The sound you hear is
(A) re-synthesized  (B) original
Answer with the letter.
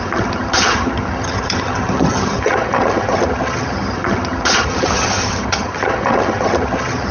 A